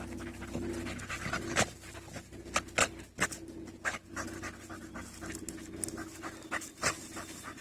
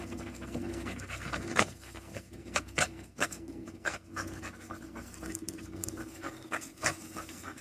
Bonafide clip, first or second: first